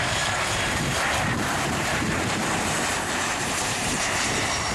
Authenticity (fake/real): fake